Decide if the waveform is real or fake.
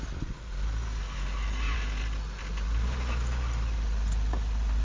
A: real